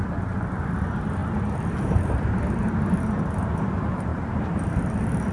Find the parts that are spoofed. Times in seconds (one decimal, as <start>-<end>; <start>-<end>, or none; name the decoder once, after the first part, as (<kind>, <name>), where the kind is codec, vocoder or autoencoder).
1.2-2.7 (vocoder, BigVGAN v2)